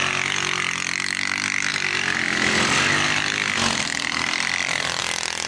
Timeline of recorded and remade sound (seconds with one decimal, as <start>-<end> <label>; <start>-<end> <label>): 0.0-5.5 recorded